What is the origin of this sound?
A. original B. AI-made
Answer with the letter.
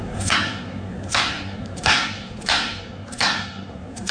B